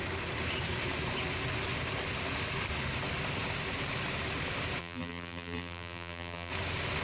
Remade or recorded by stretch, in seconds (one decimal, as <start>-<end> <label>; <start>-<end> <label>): 0.0-4.8 recorded; 4.8-6.5 remade; 6.5-7.0 recorded